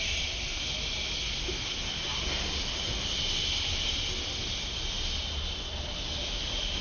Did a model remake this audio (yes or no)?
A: no